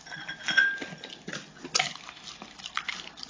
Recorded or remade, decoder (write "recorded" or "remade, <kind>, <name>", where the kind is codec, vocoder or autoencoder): recorded